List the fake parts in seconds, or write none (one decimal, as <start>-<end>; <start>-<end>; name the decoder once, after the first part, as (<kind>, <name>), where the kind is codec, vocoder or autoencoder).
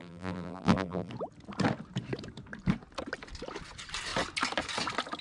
0.0-1.1 (vocoder, BigVGAN v2)